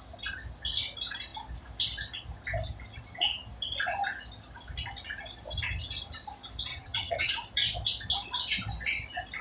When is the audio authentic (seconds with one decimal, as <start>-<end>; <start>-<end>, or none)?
0.0-6.7; 7.3-9.4